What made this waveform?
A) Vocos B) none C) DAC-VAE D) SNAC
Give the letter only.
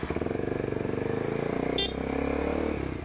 B